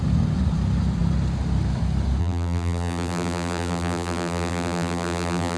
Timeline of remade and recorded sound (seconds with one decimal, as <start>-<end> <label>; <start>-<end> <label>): 0.0-2.2 recorded; 2.2-5.6 remade